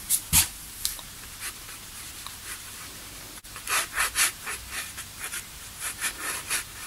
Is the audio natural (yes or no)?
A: no